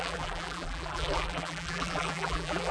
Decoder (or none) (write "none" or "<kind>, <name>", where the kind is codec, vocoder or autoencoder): vocoder, BigVGAN v2